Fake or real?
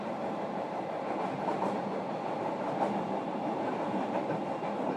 fake